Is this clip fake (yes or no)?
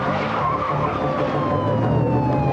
no